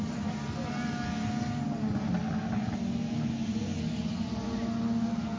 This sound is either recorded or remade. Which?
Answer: recorded